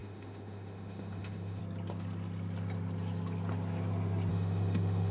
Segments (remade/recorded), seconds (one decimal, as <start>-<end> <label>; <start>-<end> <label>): 0.0-1.6 remade; 1.6-4.3 recorded; 4.3-5.1 remade